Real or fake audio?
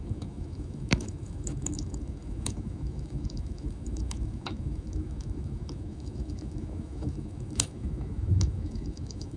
fake